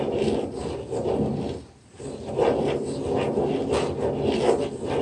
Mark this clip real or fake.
real